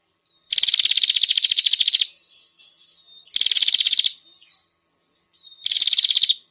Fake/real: real